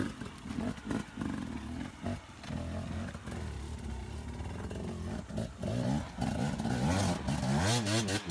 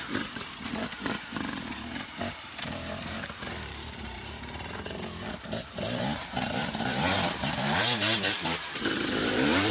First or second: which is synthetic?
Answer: second